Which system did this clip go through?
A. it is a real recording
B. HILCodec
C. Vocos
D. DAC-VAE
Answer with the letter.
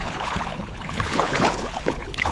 B